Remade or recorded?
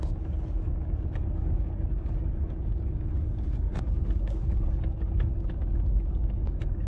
remade